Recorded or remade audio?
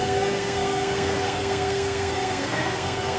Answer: remade